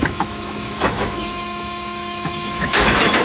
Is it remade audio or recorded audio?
remade